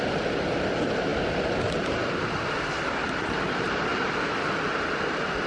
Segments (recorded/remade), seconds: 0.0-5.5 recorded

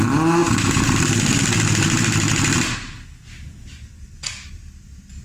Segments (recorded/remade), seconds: 0.0-5.2 recorded

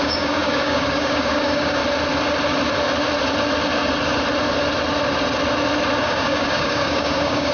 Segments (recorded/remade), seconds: 0.0-1.8 remade; 1.8-6.0 recorded; 6.0-7.5 remade

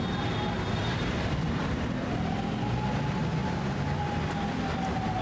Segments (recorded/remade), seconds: 0.0-0.8 recorded; 0.8-1.6 remade; 1.6-3.4 recorded; 3.4-4.6 remade; 4.6-5.2 recorded

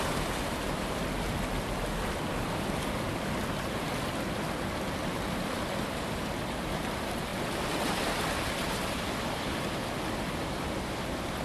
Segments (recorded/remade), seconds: 0.0-1.0 recorded; 1.0-3.1 remade; 3.1-7.3 recorded; 7.3-10.9 remade; 10.9-11.4 recorded

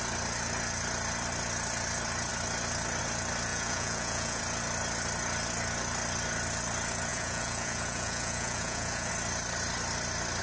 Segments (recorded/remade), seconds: 0.0-3.5 recorded; 3.5-4.4 remade; 4.4-7.1 recorded; 7.1-9.1 remade; 9.1-10.4 recorded

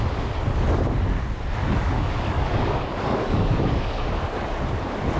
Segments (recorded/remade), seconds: 0.0-1.6 recorded; 1.6-4.1 remade; 4.1-5.2 recorded